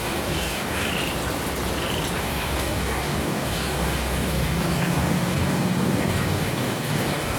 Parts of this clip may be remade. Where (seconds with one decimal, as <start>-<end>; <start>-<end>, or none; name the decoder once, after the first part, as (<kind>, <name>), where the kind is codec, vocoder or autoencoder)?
0.0-0.9 (codec, DAC); 2.2-7.4